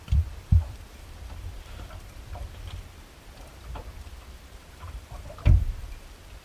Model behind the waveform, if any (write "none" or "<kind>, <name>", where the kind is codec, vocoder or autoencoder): vocoder, BigVGAN v2